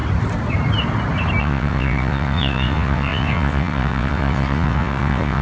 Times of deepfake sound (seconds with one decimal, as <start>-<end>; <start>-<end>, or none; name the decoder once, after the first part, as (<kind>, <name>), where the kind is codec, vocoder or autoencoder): 1.4-5.4 (vocoder, WaveNeXt)